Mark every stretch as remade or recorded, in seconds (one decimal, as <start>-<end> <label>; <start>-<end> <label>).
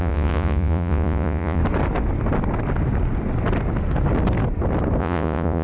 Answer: 0.0-1.6 remade; 1.6-5.0 recorded; 5.0-5.6 remade